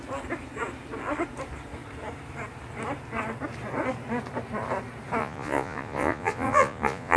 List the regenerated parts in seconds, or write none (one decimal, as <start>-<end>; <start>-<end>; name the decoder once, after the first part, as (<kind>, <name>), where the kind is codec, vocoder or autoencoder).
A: 5.2-7.2 (vocoder, Vocos)